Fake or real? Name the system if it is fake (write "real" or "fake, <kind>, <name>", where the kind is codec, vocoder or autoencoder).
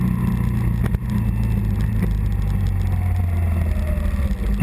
real